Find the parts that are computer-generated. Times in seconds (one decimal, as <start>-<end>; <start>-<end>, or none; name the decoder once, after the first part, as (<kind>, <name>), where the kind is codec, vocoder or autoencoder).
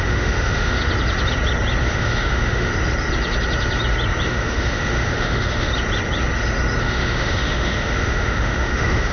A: 0.0-0.8 (autoencoder, DAC-VAE); 1.8-2.7; 4.3-5.7; 6.8-9.1